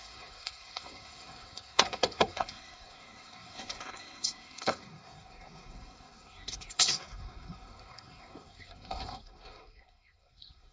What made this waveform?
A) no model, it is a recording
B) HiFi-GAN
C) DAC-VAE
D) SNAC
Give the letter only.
D